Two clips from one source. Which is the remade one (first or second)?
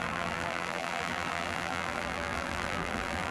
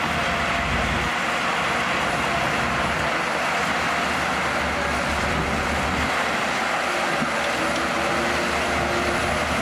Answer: first